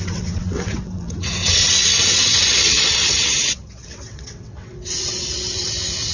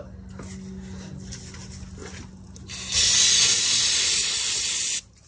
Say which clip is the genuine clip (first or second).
second